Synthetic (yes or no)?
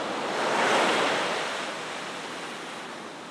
no